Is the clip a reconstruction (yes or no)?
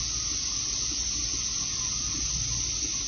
no